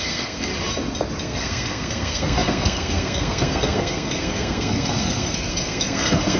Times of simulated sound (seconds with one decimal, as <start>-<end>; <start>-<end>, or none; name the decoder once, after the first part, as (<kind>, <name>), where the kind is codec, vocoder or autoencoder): 0.0-0.5 (codec, SNAC); 1.2-6.4